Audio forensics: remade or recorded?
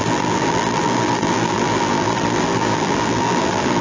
remade